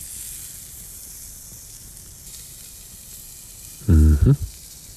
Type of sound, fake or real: real